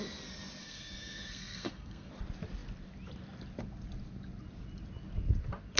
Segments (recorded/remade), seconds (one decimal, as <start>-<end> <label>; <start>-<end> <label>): 0.0-0.6 recorded; 0.6-2.1 remade; 2.1-5.8 recorded

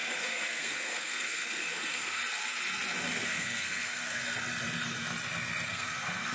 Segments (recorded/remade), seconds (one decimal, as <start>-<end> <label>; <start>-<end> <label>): 0.0-2.2 remade; 2.2-3.1 recorded; 3.1-4.2 remade; 4.2-5.7 recorded; 5.7-6.3 remade

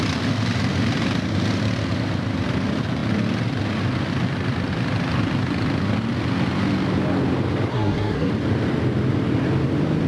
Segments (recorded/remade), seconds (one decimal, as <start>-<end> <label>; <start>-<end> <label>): 0.0-7.7 recorded; 7.7-8.3 remade; 8.3-10.1 recorded

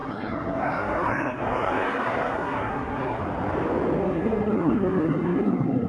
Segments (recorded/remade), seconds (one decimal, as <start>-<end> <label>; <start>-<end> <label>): 0.0-3.2 remade; 3.2-4.0 recorded; 4.0-5.9 remade